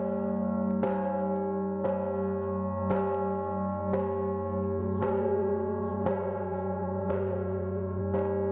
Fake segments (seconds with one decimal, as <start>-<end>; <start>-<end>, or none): 4.8-8.0